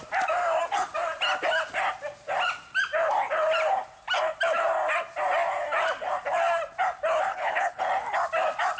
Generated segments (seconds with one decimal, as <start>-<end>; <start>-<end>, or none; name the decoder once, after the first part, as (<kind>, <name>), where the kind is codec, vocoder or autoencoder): 7.3-7.8 (codec, HILCodec)